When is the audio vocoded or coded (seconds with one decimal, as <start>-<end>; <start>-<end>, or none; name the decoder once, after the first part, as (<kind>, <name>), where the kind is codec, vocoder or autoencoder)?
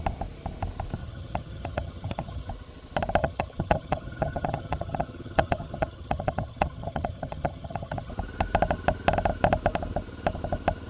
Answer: 1.0-2.5 (vocoder, HiFi-GAN); 3.2-8.1